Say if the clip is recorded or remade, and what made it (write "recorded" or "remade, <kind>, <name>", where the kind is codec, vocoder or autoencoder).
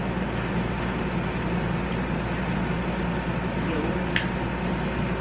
recorded